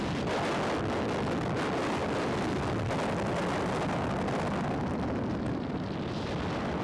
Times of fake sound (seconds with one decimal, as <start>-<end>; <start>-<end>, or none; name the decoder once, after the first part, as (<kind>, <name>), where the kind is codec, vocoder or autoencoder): none